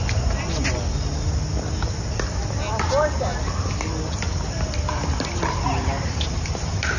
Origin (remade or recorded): recorded